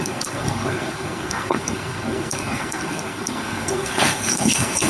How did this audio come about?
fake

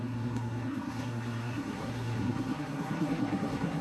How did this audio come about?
fake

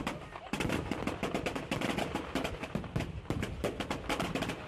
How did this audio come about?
real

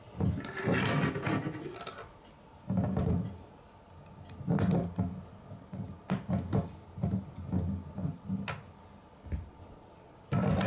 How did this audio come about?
real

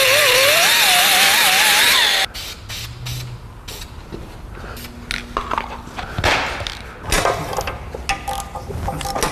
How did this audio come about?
real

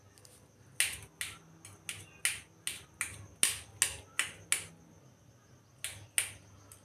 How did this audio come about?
real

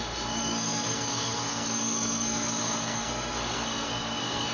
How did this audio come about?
fake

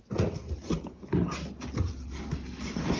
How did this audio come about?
real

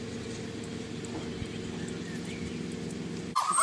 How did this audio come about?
real